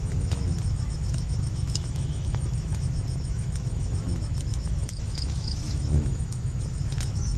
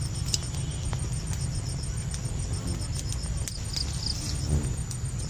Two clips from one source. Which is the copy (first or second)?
first